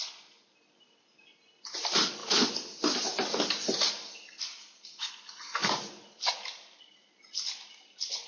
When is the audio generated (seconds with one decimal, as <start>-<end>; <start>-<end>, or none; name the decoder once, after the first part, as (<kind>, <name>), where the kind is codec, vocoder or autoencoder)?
5.6-8.3 (vocoder, BigVGAN v2)